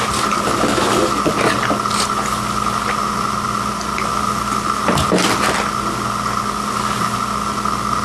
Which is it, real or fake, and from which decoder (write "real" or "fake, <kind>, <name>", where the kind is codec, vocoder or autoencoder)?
real